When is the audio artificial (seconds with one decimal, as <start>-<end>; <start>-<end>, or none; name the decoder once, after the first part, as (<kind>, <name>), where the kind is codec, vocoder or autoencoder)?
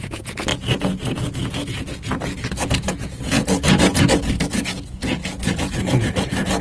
0.0-6.6 (vocoder, Vocos)